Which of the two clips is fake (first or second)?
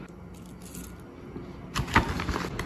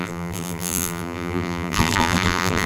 second